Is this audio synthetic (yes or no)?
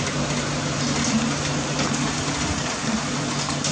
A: no